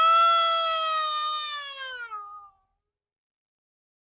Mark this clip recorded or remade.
recorded